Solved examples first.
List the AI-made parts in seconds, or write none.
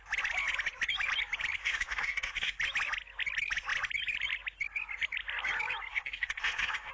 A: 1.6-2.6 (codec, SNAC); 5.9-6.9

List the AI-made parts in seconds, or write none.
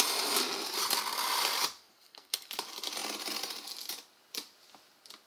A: 1.8-2.5 (codec, SNAC)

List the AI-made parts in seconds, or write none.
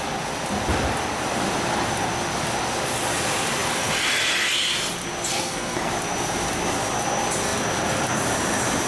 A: 5.3-5.9 (codec, SNAC)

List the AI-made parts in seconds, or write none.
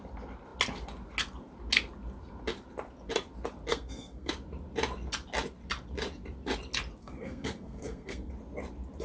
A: 3.7-4.3 (codec, SNAC); 7.0-8.3